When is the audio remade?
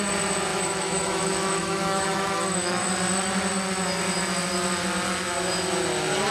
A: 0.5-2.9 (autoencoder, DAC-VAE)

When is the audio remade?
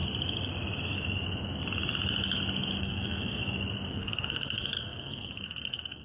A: 2.8-3.4 (codec, SNAC); 3.9-6.0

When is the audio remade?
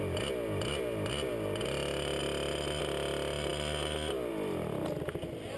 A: none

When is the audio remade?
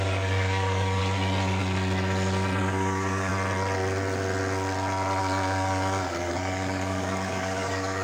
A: 0.0-1.0 (codec, DAC); 2.6-3.3; 5.2-8.0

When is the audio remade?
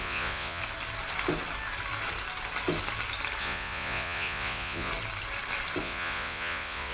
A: 0.0-0.6 (vocoder, Vocos); 3.4-4.9; 5.8-6.9